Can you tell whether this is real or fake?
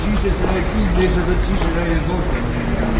real